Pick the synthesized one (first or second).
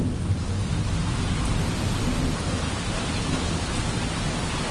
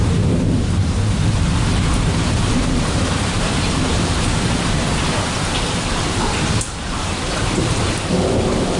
second